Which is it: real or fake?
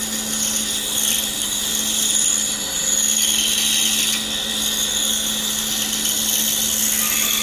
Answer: real